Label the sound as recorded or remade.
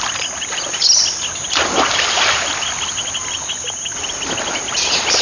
recorded